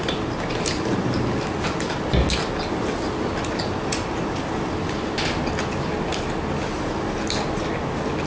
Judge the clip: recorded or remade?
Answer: recorded